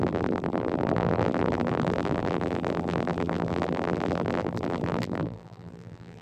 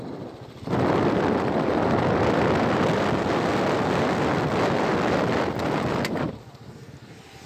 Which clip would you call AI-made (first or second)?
first